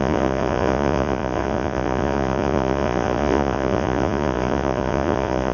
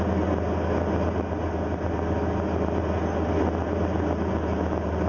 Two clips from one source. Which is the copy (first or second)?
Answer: first